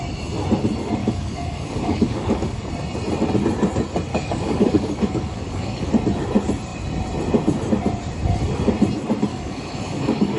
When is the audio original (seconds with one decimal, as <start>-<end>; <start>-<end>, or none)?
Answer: 0.0-1.0; 2.7-4.1; 5.9-9.3